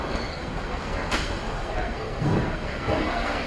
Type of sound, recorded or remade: remade